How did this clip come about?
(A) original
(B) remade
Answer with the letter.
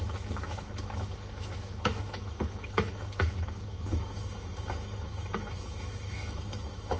B